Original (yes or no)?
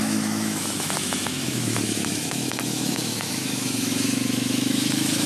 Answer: no